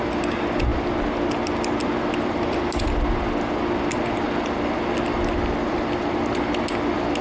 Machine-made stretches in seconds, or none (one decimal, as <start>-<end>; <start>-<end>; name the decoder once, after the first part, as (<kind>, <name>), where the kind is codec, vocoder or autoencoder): none